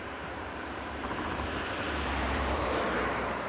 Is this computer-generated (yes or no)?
yes